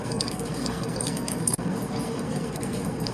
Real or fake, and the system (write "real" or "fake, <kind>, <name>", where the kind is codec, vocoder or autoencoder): fake, codec, SNAC